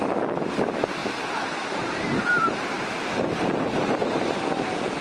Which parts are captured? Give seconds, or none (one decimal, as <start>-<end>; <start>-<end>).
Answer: 0.0-1.0; 4.0-5.0